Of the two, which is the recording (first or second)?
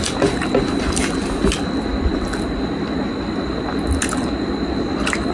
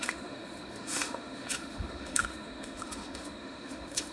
first